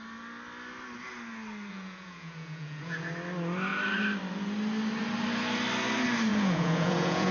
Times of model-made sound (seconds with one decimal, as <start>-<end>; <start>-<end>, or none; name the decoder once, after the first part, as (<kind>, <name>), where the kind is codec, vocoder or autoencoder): 1.7-3.1 (vocoder, Vocos); 6.3-7.3